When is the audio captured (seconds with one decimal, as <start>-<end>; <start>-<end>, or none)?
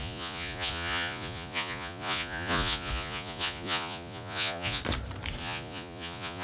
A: 4.8-5.4